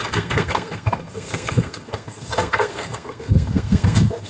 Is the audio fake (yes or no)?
yes